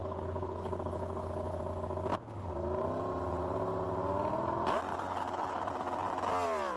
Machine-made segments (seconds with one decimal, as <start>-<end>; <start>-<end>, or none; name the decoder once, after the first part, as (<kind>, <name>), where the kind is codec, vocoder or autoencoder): 0.0-1.6 (codec, HILCodec); 4.9-5.6